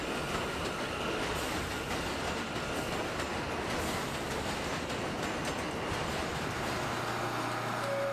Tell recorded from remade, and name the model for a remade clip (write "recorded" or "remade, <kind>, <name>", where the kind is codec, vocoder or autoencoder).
recorded